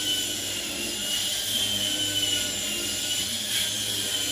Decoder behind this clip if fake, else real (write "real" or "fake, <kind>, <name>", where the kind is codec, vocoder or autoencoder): real